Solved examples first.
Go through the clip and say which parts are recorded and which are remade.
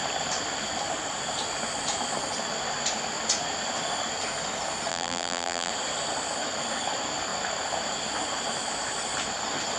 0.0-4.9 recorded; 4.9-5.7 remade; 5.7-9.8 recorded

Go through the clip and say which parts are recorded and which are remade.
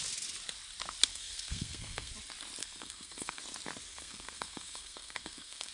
0.0-1.1 recorded; 1.1-2.1 remade; 2.1-2.6 recorded; 2.6-3.4 remade; 3.4-3.9 recorded; 3.9-5.7 remade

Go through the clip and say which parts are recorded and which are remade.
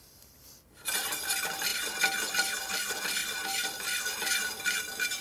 0.0-5.2 recorded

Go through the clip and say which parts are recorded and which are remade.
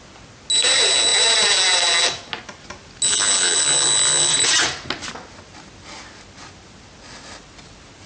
0.0-4.3 recorded; 4.3-4.9 remade; 4.9-8.1 recorded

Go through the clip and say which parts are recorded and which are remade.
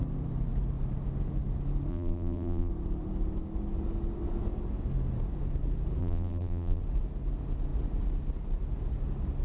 0.0-1.9 recorded; 1.9-2.7 remade; 2.7-6.0 recorded; 6.0-6.8 remade; 6.8-9.4 recorded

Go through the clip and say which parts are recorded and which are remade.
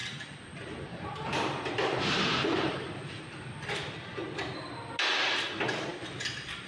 0.0-3.2 remade; 3.2-6.7 recorded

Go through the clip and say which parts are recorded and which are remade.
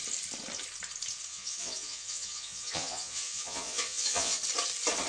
0.0-1.3 recorded; 1.3-4.4 remade; 4.4-5.1 recorded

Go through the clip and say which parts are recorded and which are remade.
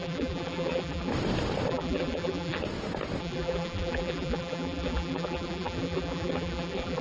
0.0-1.1 remade; 1.1-1.7 recorded; 1.7-2.6 remade; 2.6-3.2 recorded; 3.2-7.0 remade